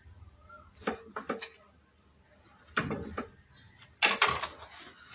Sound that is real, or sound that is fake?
real